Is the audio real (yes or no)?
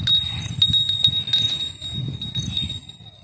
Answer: yes